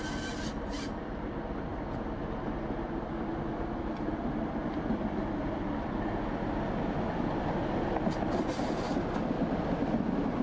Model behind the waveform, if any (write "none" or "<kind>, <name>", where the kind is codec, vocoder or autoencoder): vocoder, BigVGAN v2